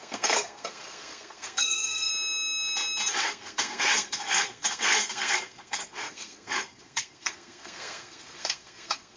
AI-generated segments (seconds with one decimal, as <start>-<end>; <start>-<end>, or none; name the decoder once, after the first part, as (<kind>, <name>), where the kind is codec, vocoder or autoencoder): 0.0-2.1 (codec, SNAC); 3.2-9.2

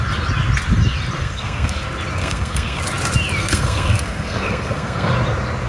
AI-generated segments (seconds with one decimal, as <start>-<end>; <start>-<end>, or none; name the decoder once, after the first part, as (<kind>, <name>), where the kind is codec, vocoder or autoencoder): 1.2-1.8 (codec, SNAC); 2.2-2.8; 3.4-5.1

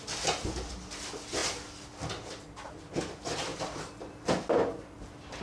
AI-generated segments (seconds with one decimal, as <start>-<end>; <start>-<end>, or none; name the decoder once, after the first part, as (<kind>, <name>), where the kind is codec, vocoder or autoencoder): none

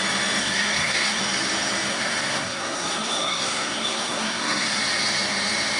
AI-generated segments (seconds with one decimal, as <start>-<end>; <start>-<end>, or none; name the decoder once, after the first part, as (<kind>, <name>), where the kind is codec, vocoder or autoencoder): 0.4-1.2 (codec, SNAC); 1.9-4.8

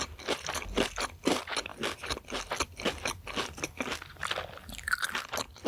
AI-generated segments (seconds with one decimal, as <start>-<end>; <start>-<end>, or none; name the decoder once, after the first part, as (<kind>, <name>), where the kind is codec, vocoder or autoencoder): none